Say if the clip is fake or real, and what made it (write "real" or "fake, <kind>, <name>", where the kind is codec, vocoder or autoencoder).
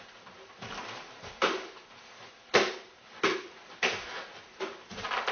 real